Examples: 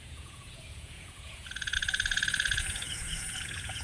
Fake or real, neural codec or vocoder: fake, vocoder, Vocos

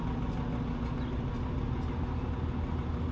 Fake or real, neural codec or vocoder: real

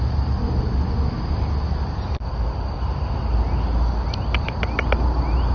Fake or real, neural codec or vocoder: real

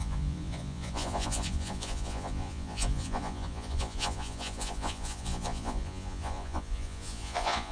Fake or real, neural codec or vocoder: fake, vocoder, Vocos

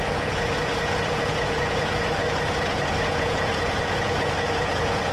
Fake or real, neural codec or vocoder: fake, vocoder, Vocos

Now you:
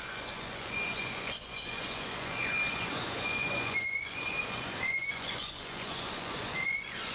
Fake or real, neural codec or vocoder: fake, vocoder, Vocos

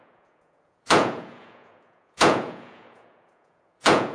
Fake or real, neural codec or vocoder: fake, vocoder, Vocos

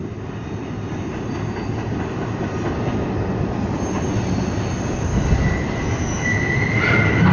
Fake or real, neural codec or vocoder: real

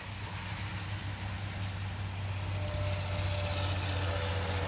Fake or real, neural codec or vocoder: real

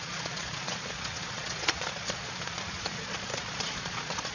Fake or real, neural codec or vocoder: fake, vocoder, Vocos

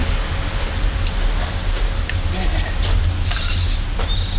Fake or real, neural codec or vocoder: real